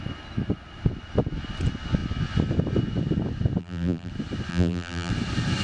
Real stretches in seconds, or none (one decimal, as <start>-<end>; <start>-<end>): 0.0-3.6; 4.1-4.5; 5.1-5.6